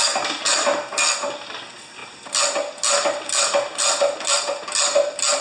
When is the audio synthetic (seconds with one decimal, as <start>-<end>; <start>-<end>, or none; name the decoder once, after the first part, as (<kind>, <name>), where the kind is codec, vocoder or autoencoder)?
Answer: none